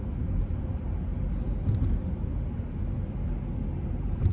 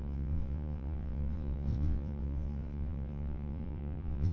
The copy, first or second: second